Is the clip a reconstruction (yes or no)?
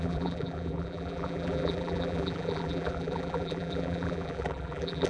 yes